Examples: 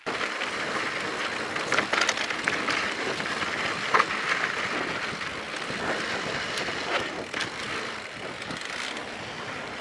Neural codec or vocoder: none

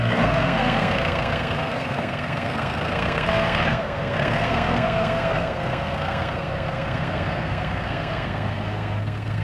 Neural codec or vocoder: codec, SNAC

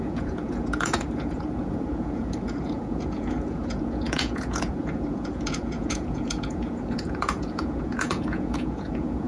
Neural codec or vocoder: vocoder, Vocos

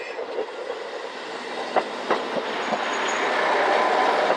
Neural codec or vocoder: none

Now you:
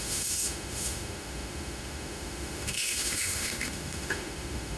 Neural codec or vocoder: autoencoder, DAC-VAE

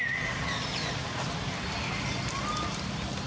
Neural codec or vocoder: none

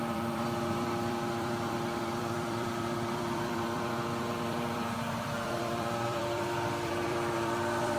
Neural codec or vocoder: vocoder, BigVGAN v2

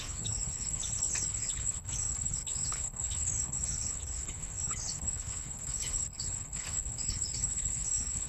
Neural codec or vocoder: codec, HILCodec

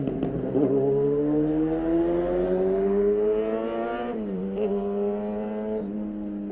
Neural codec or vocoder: none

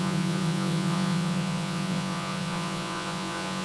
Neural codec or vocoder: vocoder, Vocos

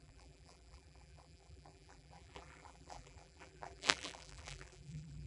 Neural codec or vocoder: vocoder, BigVGAN v2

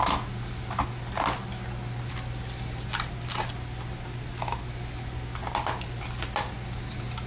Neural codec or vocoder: none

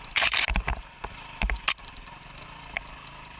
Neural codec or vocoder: none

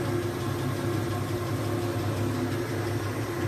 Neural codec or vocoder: none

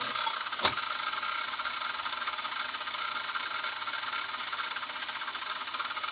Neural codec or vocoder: none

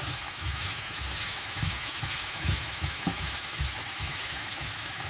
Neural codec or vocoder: autoencoder, DAC-VAE